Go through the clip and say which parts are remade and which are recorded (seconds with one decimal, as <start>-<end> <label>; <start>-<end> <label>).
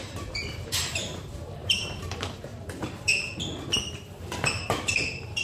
0.0-5.4 remade